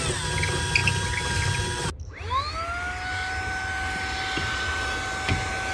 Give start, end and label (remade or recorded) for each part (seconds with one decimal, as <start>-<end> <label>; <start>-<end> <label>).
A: 0.0-5.7 recorded